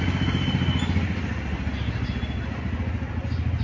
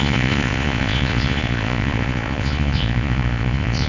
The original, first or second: first